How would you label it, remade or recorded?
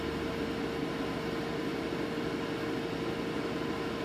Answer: recorded